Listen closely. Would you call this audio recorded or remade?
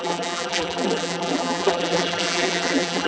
remade